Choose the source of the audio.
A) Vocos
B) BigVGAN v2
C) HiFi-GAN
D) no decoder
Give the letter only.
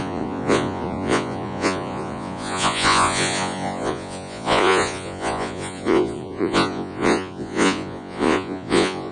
A